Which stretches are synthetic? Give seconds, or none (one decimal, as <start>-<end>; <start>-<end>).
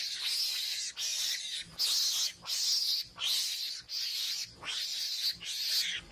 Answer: 1.1-1.8